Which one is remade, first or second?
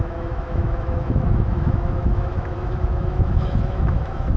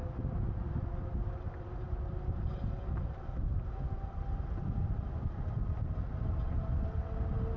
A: first